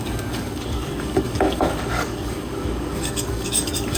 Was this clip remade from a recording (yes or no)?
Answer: yes